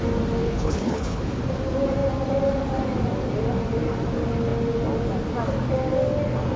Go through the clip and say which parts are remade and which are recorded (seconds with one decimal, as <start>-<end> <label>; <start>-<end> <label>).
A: 0.0-0.4 recorded; 0.4-1.2 remade; 1.2-6.6 recorded